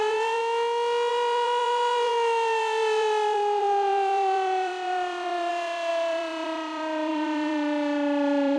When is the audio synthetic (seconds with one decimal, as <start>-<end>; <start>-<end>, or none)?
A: 0.0-0.4; 1.1-8.6